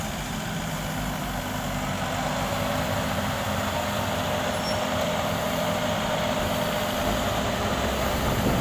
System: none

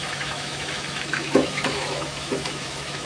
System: autoencoder, DAC-VAE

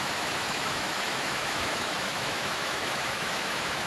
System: autoencoder, DAC-VAE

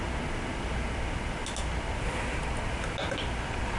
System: none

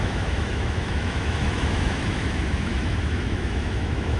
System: autoencoder, DAC-VAE